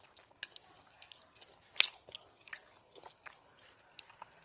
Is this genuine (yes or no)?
yes